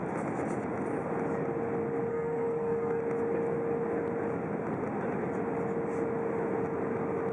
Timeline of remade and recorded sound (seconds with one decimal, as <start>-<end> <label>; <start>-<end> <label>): 0.0-2.1 recorded; 2.1-3.0 remade; 3.0-7.3 recorded